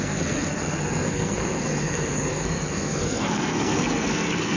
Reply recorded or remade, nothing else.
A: remade